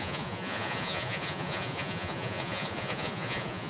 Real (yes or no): no